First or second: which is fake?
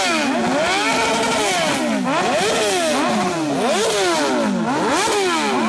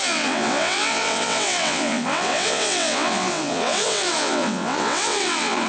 second